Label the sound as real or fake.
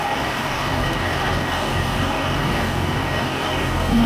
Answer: fake